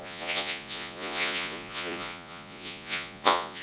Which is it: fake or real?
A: fake